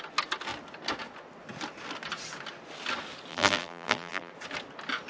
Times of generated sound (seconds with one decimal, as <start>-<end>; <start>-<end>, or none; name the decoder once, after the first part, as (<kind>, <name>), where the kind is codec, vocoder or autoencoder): 3.3-4.3 (vocoder, BigVGAN v2)